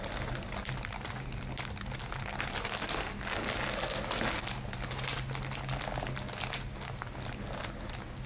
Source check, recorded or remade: recorded